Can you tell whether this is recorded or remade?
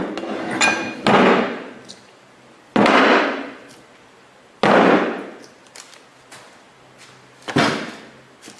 recorded